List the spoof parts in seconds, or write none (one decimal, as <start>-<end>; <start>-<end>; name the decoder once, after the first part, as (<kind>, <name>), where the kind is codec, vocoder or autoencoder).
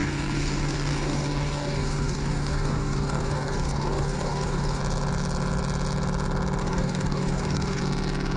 0.0-4.8 (codec, DAC); 6.6-7.8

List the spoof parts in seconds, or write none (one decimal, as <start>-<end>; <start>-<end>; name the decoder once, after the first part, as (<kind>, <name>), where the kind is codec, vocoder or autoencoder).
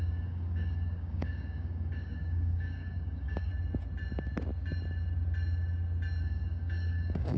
0.0-3.5 (codec, DAC); 6.2-7.4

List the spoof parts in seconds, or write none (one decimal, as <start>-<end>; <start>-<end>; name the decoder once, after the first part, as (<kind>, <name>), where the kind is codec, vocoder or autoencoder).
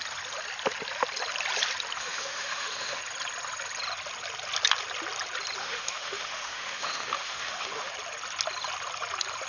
2.0-3.0 (autoencoder, DAC-VAE); 5.6-7.9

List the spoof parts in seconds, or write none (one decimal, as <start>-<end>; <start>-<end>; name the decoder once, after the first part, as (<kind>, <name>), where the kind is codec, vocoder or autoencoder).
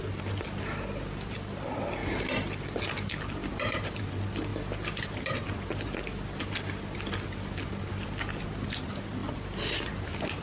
2.0-2.8 (vocoder, BigVGAN v2); 3.4-4.0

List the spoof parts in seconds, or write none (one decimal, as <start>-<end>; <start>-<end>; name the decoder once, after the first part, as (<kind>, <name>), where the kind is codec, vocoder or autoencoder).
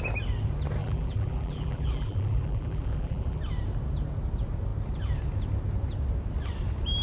0.8-3.4 (vocoder, BigVGAN v2)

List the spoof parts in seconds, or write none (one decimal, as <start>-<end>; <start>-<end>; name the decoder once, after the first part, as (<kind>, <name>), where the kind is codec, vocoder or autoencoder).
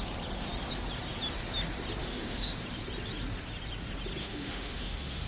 2.0-2.6 (autoencoder, DAC-VAE); 4.2-5.3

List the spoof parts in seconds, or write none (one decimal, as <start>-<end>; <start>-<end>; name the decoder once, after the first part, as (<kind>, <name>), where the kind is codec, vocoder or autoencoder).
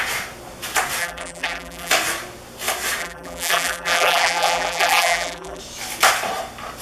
1.0-1.9 (vocoder, BigVGAN v2); 3.0-5.6